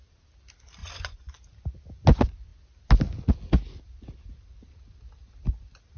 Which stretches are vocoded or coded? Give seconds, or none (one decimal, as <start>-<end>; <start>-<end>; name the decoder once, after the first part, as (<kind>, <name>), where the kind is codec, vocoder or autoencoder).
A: 0.8-1.4 (vocoder, Vocos)